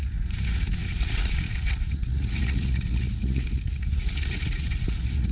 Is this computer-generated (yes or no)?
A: yes